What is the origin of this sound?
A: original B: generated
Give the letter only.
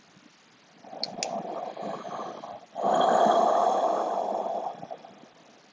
A